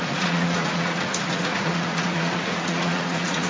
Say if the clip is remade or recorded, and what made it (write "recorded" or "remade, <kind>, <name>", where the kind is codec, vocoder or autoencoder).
remade, vocoder, Vocos